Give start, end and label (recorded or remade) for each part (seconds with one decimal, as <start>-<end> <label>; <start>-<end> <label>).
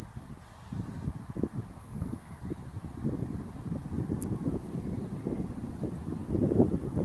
0.0-1.8 recorded; 1.8-2.4 remade; 2.4-7.0 recorded